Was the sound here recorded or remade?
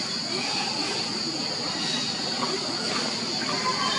recorded